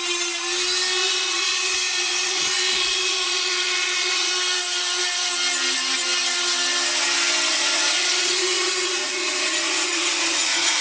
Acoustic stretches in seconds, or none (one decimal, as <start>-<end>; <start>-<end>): 0.0-1.0; 4.3-7.5